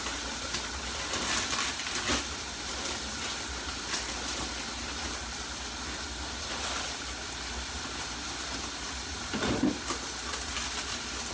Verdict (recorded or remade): recorded